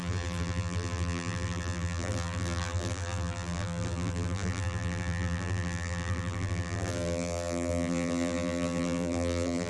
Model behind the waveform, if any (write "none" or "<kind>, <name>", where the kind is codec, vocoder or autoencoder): vocoder, BigVGAN v2